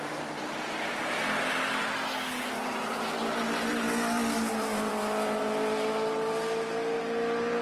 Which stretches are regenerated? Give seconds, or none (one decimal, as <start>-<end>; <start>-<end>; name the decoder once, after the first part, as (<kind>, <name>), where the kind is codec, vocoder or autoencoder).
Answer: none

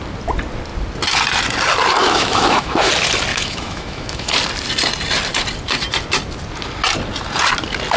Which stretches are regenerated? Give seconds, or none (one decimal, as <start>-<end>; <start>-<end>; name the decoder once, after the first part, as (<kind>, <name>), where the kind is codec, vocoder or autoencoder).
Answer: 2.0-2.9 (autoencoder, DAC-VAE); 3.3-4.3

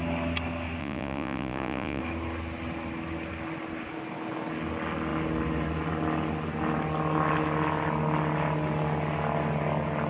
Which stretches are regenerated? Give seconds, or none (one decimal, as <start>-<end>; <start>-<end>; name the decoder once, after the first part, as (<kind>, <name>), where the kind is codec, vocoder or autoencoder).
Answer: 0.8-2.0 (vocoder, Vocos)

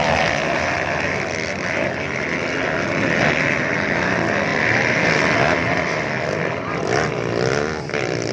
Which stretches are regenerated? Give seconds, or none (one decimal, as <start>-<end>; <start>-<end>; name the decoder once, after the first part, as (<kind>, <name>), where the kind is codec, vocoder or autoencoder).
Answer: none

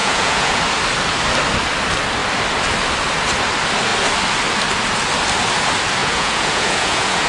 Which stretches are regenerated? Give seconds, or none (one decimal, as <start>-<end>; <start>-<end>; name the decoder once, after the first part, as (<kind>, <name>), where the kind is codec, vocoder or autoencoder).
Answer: 0.0-0.6 (vocoder, Vocos); 6.0-7.3

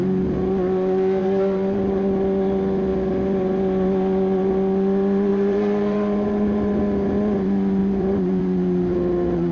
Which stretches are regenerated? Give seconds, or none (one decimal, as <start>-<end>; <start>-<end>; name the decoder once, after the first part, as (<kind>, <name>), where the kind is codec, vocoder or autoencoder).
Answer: 1.2-2.0 (vocoder, BigVGAN v2); 5.3-6.8; 7.8-8.4